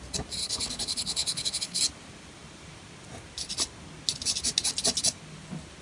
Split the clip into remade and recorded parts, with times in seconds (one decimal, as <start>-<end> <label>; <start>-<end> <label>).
0.0-0.4 recorded; 0.4-1.8 remade; 1.8-5.8 recorded